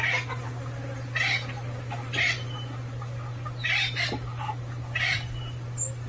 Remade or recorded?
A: recorded